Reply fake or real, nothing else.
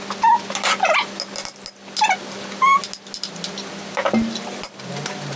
real